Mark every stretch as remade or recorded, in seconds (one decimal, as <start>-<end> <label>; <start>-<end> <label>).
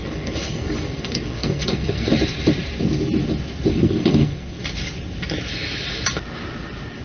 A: 0.0-2.1 remade; 2.1-3.7 recorded; 3.7-4.6 remade; 4.6-7.0 recorded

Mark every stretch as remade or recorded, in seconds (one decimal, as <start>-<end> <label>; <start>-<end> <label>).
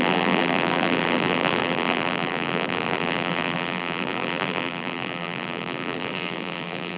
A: 0.0-7.0 remade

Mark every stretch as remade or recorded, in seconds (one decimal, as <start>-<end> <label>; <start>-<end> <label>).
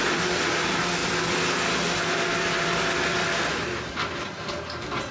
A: 0.0-5.1 recorded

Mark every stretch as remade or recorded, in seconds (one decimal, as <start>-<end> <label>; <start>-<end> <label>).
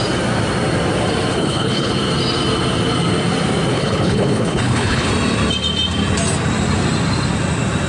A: 0.0-1.3 recorded; 1.3-1.9 remade; 1.9-3.7 recorded; 3.7-5.1 remade; 5.1-7.9 recorded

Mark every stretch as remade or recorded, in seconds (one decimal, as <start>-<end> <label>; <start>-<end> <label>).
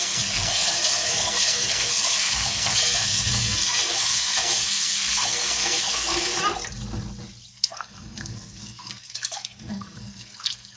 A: 0.0-6.3 remade; 6.3-7.5 recorded; 7.5-10.8 remade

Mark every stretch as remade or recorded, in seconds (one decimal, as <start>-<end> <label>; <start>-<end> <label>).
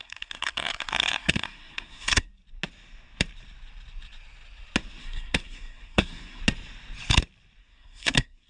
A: 0.0-2.3 remade; 2.3-5.0 recorded; 5.0-6.4 remade; 6.4-7.6 recorded; 7.6-8.5 remade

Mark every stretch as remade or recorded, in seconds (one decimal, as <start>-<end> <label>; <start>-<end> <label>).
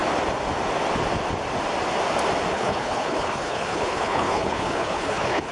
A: 0.0-2.5 recorded; 2.5-5.5 remade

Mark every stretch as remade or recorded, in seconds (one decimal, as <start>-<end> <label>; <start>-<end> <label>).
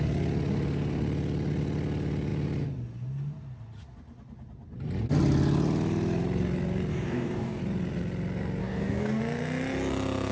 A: 0.0-6.9 recorded; 6.9-7.6 remade; 7.6-8.6 recorded; 8.6-9.2 remade; 9.2-10.3 recorded